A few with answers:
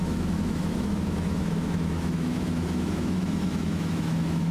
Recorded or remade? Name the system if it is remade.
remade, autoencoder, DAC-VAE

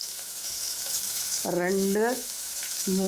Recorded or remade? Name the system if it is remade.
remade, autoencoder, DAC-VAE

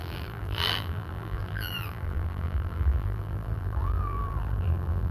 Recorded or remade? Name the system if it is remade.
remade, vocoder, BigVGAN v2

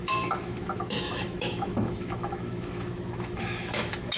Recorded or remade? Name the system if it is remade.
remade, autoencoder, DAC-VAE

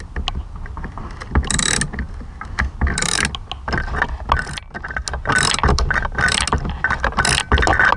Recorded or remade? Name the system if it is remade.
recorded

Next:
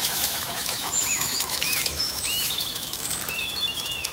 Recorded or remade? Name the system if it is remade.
remade, autoencoder, DAC-VAE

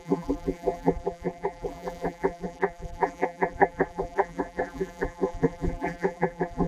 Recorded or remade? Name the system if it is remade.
remade, vocoder, BigVGAN v2